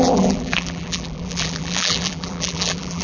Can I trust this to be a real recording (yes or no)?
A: no